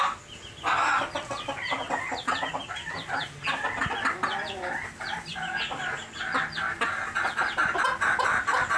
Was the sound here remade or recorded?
recorded